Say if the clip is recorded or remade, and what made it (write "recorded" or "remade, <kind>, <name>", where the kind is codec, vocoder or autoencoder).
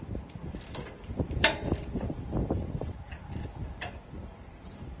remade, vocoder, BigVGAN v2